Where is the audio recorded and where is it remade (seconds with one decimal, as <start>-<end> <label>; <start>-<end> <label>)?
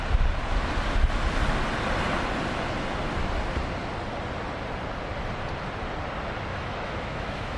0.0-6.5 recorded; 6.5-7.6 remade